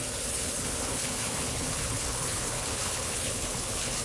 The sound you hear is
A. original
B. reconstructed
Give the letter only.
B